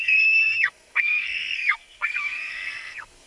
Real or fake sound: fake